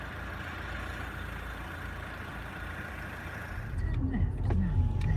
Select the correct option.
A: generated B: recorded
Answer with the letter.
B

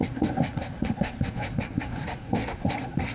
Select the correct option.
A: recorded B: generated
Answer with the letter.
B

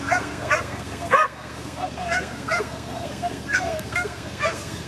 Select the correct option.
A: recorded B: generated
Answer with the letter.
B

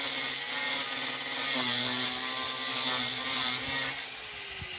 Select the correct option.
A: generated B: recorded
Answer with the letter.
B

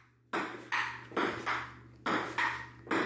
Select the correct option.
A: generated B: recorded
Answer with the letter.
B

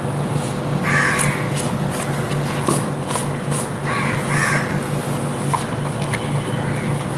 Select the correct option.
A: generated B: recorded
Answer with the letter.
B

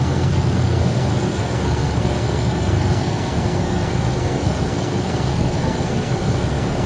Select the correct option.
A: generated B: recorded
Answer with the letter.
A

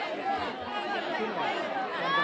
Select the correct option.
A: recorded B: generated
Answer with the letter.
A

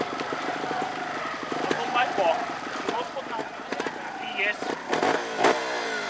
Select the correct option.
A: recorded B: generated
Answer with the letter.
A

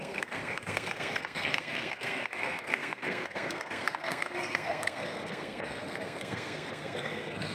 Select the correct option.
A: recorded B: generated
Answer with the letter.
B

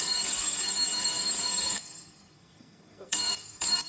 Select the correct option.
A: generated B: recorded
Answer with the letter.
A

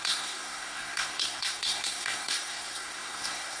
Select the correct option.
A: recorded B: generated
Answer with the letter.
B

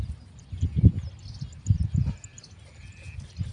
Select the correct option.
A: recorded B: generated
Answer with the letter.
A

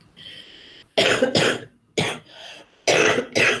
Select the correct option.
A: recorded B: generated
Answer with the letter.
A